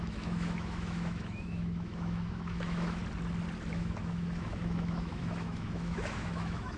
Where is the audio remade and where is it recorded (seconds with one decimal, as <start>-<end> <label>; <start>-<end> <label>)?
0.0-3.0 remade; 3.0-3.7 recorded; 3.7-6.8 remade